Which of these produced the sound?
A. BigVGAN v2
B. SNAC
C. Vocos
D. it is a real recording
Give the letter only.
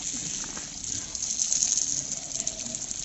D